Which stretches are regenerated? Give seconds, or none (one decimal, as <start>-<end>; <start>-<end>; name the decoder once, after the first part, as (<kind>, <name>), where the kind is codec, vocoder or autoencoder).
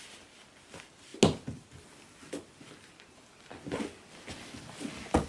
none